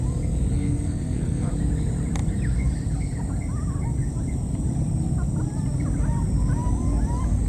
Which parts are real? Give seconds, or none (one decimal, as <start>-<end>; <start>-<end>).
0.0-0.5; 1.5-7.5